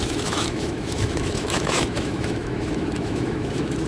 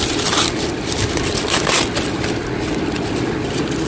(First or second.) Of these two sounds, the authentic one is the second